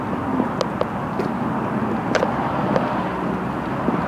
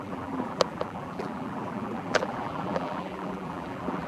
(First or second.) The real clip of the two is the first